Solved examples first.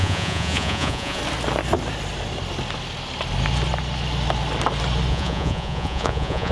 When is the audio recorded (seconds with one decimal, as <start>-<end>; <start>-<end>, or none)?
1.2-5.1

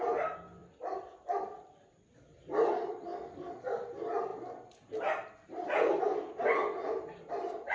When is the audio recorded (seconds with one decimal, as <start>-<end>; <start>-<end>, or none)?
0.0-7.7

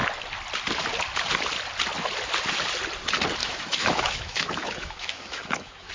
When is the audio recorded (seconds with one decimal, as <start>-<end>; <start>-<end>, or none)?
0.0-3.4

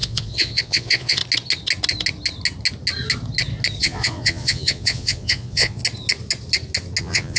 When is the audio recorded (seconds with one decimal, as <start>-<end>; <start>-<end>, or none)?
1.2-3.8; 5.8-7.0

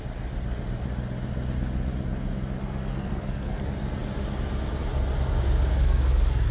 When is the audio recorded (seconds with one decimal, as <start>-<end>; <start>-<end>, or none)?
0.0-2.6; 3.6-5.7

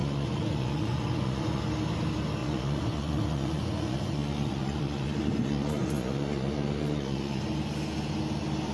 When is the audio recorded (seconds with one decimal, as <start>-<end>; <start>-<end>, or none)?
1.6-2.4; 7.4-8.7

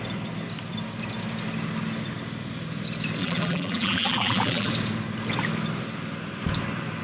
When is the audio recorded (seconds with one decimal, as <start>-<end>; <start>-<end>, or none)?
0.0-3.2; 4.7-7.0